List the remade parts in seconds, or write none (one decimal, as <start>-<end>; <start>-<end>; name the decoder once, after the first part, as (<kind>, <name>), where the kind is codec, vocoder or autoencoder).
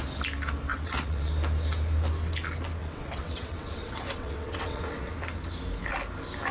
0.7-1.3 (vocoder, WaveNeXt); 2.8-5.1